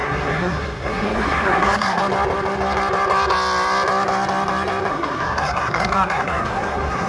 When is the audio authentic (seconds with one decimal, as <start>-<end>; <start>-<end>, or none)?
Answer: 2.0-4.9

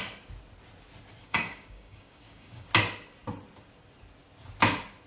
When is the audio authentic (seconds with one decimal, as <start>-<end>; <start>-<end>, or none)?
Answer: 0.0-1.2; 2.7-5.1

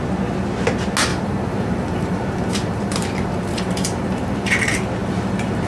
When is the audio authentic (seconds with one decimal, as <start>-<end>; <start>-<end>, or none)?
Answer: 0.0-1.1; 4.5-5.0